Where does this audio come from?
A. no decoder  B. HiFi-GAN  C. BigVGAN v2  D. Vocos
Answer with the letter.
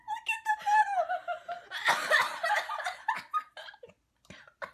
A